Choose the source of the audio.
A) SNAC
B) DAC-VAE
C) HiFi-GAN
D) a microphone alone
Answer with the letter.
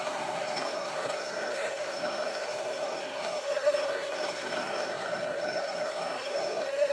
A